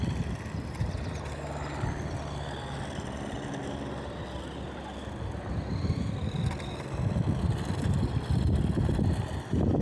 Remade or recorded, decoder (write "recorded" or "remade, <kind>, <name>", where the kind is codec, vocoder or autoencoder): recorded